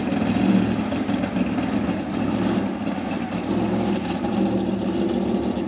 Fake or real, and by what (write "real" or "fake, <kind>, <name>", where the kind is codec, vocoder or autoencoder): real